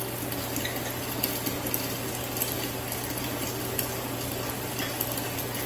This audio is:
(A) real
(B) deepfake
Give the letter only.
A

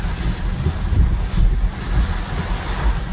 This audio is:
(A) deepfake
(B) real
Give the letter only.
B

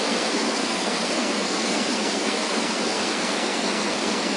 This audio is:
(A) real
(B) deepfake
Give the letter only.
B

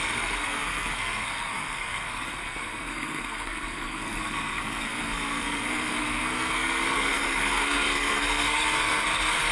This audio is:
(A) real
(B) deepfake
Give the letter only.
B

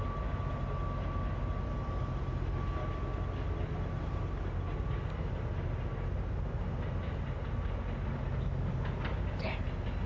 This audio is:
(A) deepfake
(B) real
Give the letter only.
B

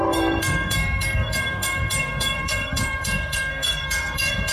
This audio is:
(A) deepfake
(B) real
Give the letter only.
A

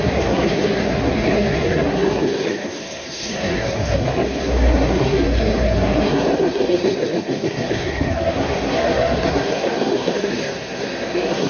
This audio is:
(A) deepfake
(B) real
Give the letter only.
A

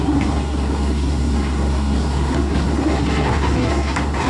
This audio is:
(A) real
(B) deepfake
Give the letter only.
B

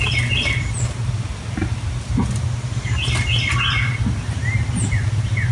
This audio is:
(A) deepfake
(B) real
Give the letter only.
B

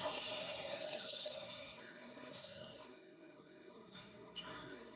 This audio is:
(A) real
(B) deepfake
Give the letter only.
B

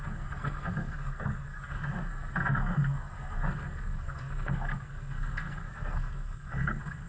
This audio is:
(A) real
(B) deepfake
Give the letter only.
B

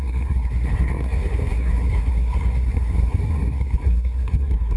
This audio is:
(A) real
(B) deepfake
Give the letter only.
B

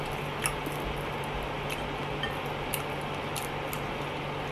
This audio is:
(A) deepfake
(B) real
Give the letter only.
B